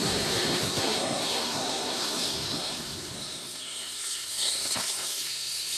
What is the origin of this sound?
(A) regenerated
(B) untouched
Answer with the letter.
A